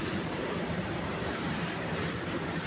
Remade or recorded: remade